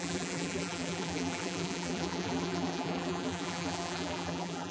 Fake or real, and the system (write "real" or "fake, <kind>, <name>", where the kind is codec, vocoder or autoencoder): fake, vocoder, BigVGAN v2